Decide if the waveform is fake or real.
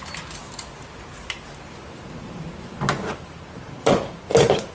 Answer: real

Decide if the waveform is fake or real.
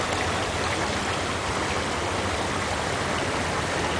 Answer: real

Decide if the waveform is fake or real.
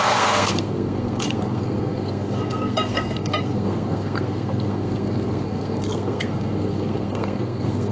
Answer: fake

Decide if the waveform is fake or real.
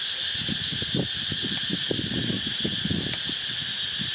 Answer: real